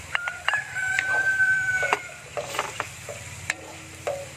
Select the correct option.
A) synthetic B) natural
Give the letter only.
A